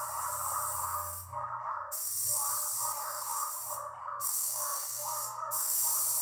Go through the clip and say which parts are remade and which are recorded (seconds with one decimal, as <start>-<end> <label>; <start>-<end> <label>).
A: 0.0-0.8 recorded; 0.8-2.5 remade; 2.5-3.0 recorded; 3.0-3.5 remade; 3.5-4.0 recorded; 4.0-5.8 remade; 5.8-6.2 recorded